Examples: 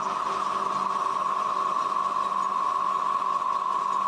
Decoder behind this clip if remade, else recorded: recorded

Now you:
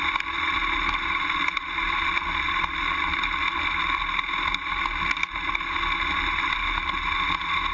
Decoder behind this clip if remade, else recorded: recorded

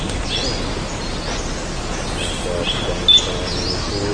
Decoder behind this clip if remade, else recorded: recorded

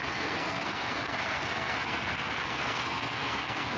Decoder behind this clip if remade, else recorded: remade, codec, SNAC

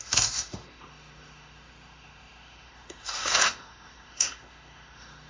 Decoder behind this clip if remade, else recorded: remade, autoencoder, DAC-VAE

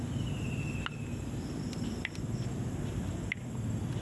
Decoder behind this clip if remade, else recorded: recorded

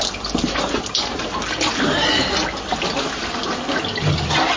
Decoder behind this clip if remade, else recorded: recorded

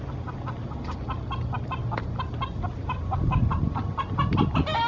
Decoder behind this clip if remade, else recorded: recorded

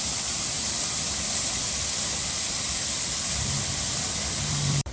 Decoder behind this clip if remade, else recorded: remade, vocoder, BigVGAN v2